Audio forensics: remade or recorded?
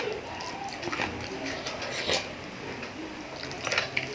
recorded